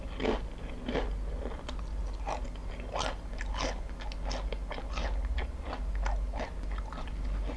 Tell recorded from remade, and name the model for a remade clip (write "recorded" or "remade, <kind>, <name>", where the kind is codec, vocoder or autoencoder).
recorded